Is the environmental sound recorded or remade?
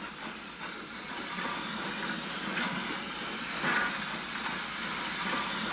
recorded